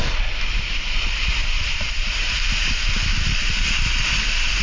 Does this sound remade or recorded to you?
recorded